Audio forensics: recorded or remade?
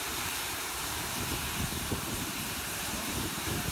remade